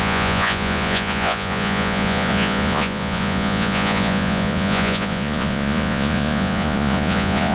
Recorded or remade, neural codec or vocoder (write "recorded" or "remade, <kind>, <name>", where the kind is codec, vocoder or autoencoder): remade, vocoder, Vocos